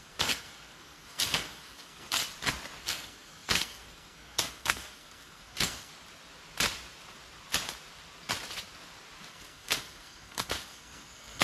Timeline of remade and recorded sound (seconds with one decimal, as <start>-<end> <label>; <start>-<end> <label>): 0.0-2.2 remade; 2.2-2.8 recorded; 2.8-5.9 remade; 5.9-9.3 recorded; 9.3-11.4 remade